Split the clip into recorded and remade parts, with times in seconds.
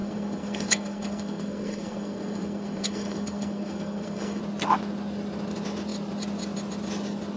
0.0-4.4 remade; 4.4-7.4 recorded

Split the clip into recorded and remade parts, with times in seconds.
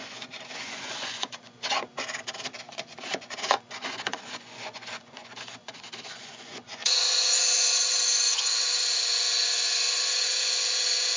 0.0-1.9 remade; 1.9-2.7 recorded; 2.7-11.2 remade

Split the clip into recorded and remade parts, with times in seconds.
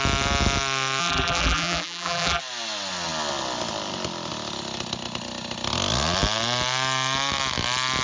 0.0-1.0 recorded; 1.0-2.4 remade; 2.4-8.0 recorded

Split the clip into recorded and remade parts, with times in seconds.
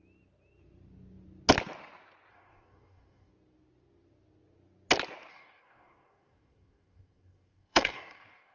0.0-2.3 recorded; 2.3-3.3 remade; 3.3-5.3 recorded; 5.3-8.5 remade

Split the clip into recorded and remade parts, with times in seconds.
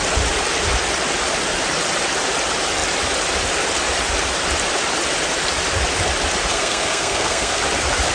0.0-6.5 recorded; 6.5-7.6 remade; 7.6-8.1 recorded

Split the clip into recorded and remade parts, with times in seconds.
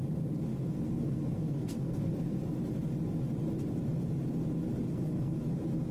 0.0-0.5 recorded; 0.5-2.4 remade; 2.4-4.9 recorded; 4.9-5.4 remade; 5.4-5.9 recorded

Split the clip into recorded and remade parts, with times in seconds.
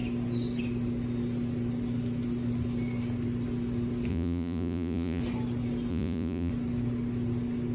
0.0-4.1 recorded; 4.1-5.2 remade; 5.2-5.9 recorded; 5.9-6.5 remade; 6.5-7.7 recorded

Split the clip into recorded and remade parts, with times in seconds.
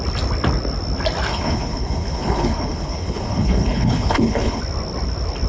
0.0-1.3 recorded; 1.3-4.6 remade; 4.6-5.5 recorded